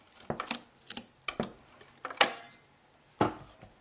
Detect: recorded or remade recorded